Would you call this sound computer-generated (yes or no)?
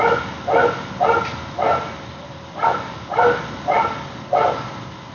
no